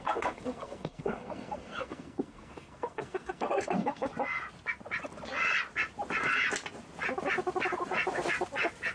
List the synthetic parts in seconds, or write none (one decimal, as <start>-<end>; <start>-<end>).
0.0-4.1